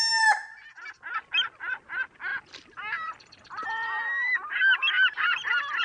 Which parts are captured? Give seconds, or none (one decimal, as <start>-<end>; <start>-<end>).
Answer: 0.0-2.3